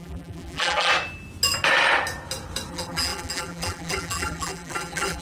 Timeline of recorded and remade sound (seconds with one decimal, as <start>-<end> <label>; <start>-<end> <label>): 0.0-0.9 remade; 0.9-2.7 recorded; 2.7-5.2 remade